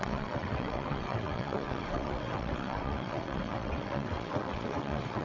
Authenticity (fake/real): fake